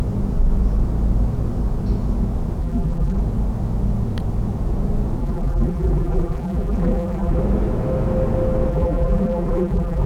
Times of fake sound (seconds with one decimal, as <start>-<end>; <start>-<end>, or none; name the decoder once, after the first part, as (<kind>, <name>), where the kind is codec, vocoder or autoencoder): 2.6-3.2 (vocoder, BigVGAN v2); 5.2-7.4; 8.7-10.1